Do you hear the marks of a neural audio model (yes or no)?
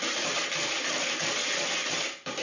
no